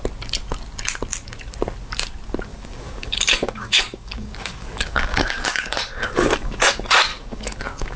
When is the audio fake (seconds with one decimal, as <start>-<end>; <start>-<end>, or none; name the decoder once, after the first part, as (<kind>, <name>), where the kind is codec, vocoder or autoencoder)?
2.5-6.6 (codec, DAC); 7.1-8.0